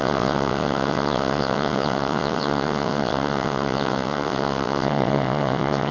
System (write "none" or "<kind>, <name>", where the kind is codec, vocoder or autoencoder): vocoder, WaveNeXt